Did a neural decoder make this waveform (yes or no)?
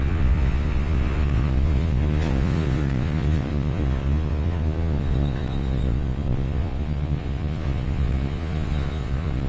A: yes